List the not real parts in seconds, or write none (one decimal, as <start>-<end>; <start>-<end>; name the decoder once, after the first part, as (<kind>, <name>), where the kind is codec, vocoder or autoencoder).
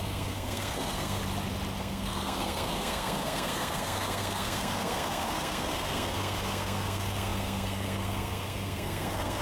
0.0-1.2 (codec, SNAC); 1.8-9.4